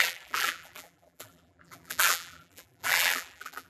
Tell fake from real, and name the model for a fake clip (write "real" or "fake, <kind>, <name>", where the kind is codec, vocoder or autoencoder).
fake, vocoder, BigVGAN v2